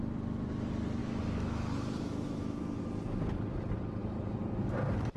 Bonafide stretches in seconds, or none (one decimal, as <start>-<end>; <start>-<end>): 0.0-1.0; 2.8-5.2